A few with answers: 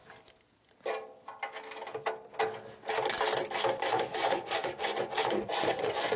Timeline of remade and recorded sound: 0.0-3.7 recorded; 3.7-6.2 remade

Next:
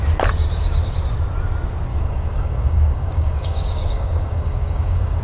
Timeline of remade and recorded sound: 0.0-1.9 recorded; 1.9-5.2 remade

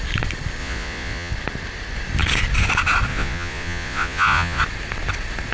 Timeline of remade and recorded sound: 0.0-0.6 recorded; 0.6-1.3 remade; 1.3-3.1 recorded; 3.1-4.6 remade; 4.6-5.5 recorded

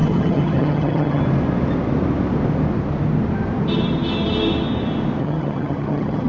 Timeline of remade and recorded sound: 0.0-1.2 remade; 1.2-5.2 recorded; 5.2-6.3 remade